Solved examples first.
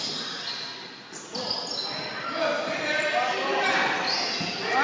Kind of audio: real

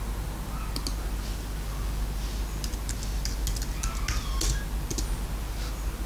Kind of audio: real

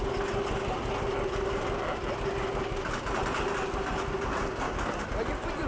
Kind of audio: real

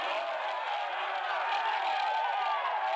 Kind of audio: real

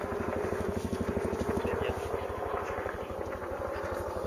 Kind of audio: real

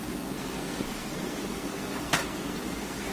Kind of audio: fake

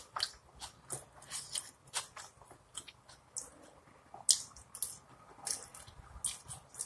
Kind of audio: real